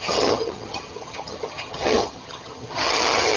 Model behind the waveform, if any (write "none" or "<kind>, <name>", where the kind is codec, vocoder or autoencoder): vocoder, HiFi-GAN